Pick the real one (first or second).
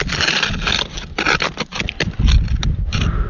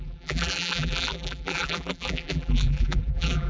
first